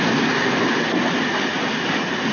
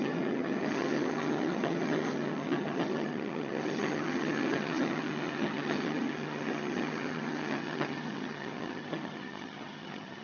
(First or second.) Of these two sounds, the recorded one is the first